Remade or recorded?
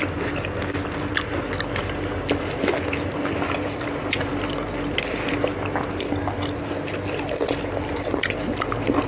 recorded